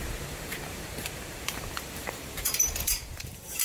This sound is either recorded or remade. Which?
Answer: remade